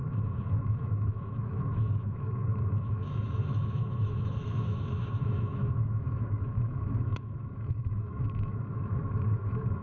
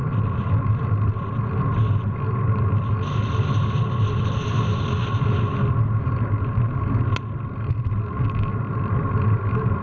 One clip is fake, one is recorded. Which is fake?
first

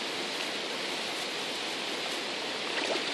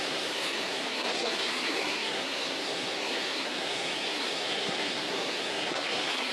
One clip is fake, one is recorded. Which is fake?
second